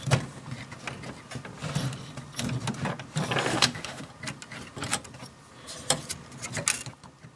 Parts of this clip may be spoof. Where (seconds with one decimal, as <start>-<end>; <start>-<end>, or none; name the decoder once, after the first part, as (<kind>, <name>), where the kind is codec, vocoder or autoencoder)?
3.5-4.1 (autoencoder, DAC-VAE)